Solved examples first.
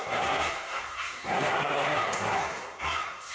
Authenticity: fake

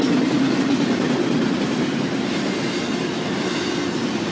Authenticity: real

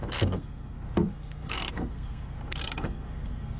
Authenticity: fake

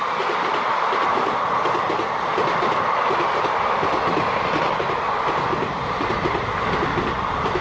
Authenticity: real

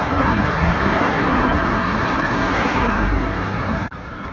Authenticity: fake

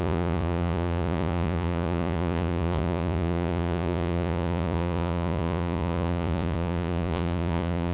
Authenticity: fake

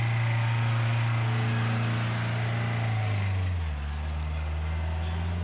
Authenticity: real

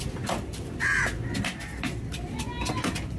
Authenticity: real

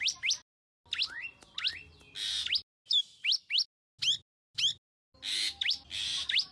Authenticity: real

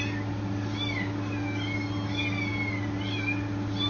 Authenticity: real